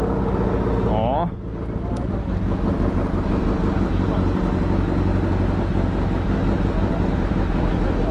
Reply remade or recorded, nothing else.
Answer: recorded